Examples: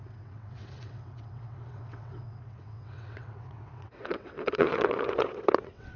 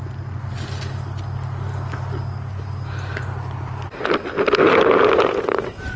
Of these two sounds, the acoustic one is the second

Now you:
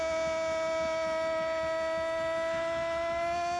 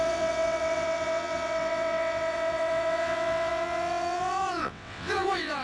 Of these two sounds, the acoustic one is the first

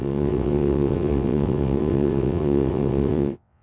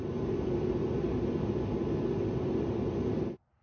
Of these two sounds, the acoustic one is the second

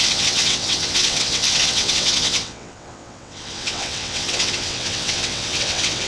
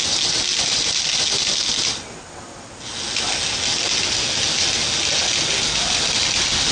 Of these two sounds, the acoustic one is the second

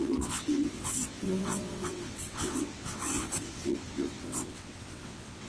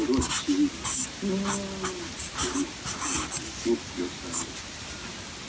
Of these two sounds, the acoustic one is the second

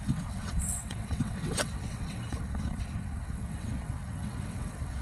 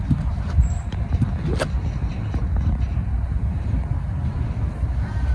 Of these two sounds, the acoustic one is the second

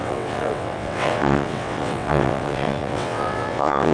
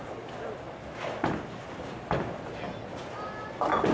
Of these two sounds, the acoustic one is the second